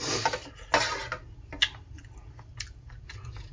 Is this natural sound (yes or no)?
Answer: yes